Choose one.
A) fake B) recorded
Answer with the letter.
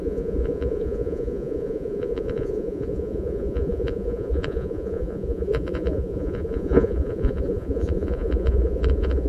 A